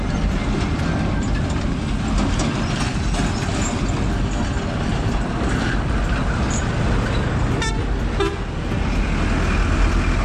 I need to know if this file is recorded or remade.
recorded